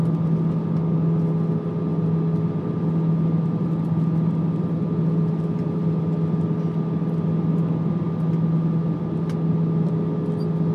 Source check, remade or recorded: recorded